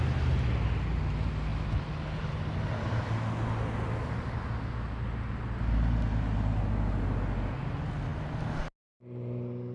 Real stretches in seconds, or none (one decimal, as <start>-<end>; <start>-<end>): 0.0-9.7